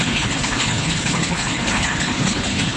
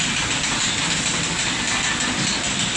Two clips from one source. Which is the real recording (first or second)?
second